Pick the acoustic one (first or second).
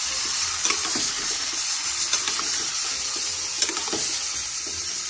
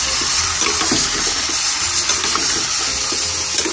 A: second